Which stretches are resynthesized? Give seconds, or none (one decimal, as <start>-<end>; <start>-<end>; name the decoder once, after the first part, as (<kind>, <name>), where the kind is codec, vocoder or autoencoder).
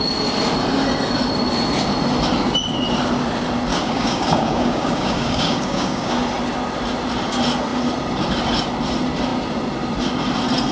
3.7-6.1 (codec, DAC)